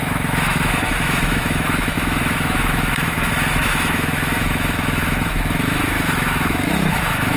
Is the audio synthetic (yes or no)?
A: yes